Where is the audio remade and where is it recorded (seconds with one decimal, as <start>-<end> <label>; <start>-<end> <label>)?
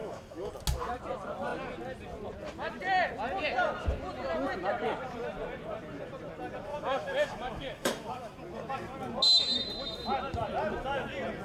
0.0-0.5 remade; 0.5-6.7 recorded; 6.7-8.3 remade; 8.3-11.4 recorded